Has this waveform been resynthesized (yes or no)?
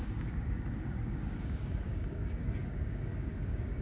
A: yes